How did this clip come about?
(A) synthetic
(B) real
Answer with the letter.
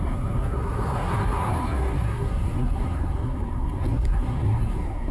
A